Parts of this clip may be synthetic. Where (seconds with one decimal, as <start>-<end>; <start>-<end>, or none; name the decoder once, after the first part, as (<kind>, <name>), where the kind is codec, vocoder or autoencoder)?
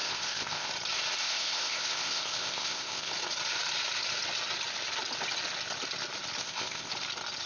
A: 0.0-0.7 (codec, ZipCodec); 1.2-3.1; 6.4-6.9